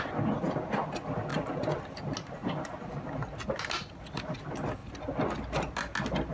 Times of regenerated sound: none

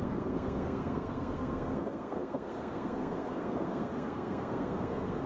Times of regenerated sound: 0.0-5.3 (codec, SNAC)

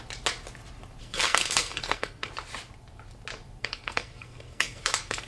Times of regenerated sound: 1.0-2.3 (codec, SNAC); 3.6-5.3

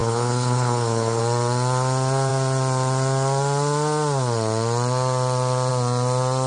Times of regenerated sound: 0.0-1.2 (codec, HILCodec)

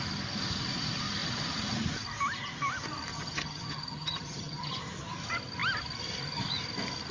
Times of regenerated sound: 3.1-4.7 (vocoder, HiFi-GAN)

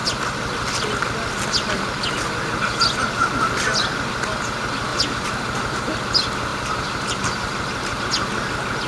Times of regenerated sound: 4.9-5.8 (vocoder, BigVGAN v2); 6.5-8.0

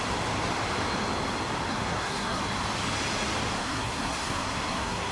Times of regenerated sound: 1.7-2.4 (codec, SNAC); 3.6-5.1

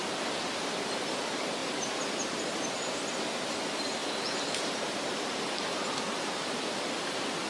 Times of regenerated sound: 1.6-2.4 (vocoder, BigVGAN v2); 4.0-5.2